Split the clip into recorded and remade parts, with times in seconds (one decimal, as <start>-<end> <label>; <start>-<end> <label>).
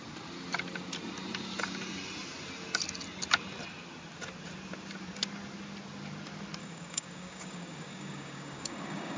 0.0-6.6 recorded; 6.6-9.2 remade